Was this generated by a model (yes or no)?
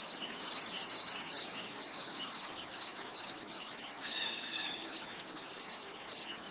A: yes